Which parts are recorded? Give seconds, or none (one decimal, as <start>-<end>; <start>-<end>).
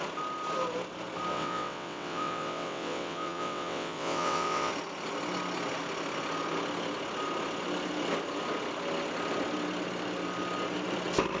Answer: 0.0-1.3; 4.7-11.4